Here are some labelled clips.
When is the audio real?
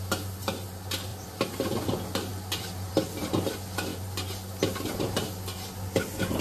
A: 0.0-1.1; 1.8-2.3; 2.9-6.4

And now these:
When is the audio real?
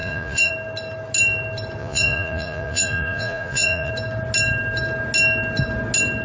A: 0.5-1.8; 3.9-6.2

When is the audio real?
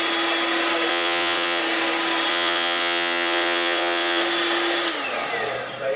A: 0.0-0.9; 1.6-2.3; 4.2-6.0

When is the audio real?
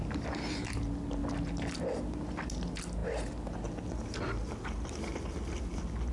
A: 0.0-6.1